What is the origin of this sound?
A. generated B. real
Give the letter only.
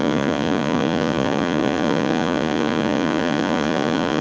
A